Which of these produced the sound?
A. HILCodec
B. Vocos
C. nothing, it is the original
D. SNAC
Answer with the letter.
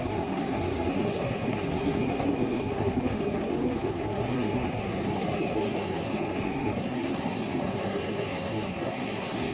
D